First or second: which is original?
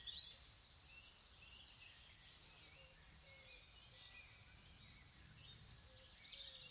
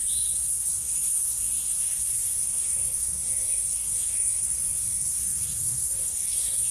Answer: first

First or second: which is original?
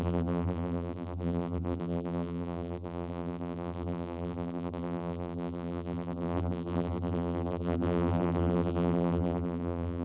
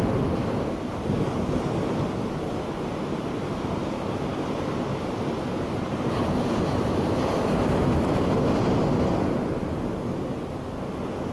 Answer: second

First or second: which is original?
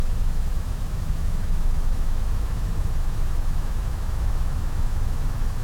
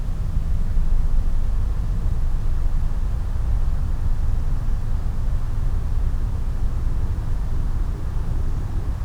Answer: second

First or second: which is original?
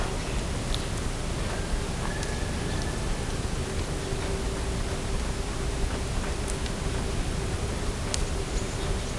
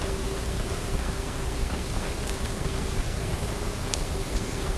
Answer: first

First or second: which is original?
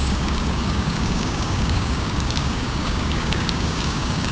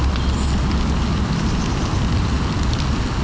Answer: second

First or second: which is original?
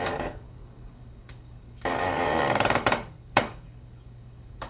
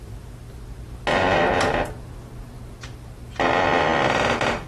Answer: second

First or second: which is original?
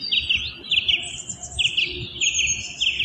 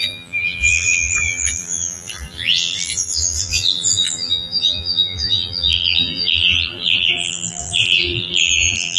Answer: first